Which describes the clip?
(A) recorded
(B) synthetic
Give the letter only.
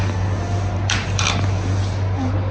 A